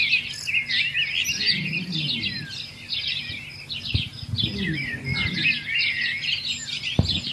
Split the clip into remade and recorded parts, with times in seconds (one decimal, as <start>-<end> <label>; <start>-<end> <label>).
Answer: 0.0-7.3 recorded